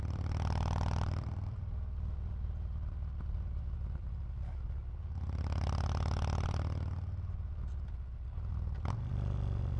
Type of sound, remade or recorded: remade